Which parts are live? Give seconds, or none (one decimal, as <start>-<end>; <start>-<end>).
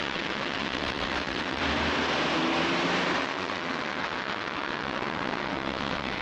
1.6-3.2